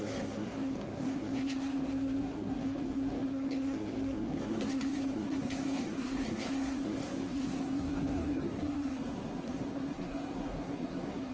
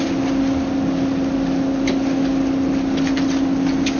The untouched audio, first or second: second